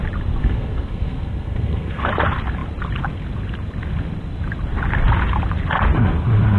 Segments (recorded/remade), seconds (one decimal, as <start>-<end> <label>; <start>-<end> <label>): 0.0-0.4 recorded; 0.4-2.1 remade; 2.1-6.6 recorded